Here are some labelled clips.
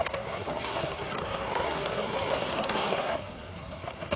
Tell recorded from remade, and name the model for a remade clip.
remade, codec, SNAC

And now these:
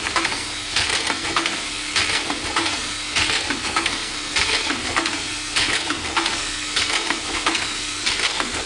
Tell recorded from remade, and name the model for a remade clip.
remade, codec, SNAC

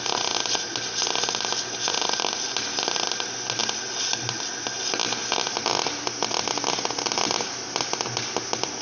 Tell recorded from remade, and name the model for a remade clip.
recorded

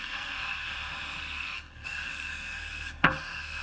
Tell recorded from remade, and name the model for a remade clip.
remade, codec, SNAC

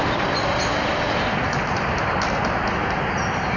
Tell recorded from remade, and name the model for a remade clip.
recorded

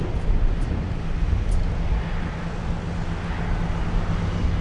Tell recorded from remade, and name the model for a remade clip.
recorded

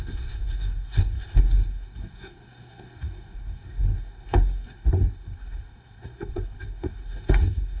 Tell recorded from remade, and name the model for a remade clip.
remade, codec, SNAC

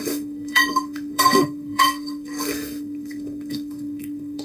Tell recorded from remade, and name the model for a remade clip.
remade, codec, SNAC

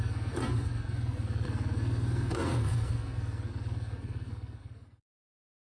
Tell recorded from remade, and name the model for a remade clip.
remade, codec, SNAC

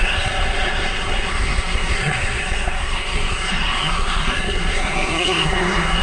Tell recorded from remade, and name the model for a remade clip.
remade, codec, SNAC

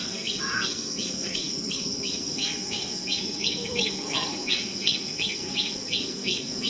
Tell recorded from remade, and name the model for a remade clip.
remade, codec, SNAC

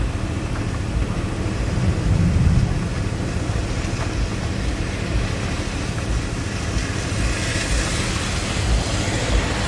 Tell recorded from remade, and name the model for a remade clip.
recorded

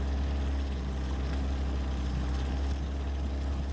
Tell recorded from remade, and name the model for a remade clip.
recorded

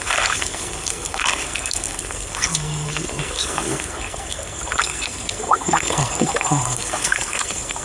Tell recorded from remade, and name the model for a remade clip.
remade, codec, SNAC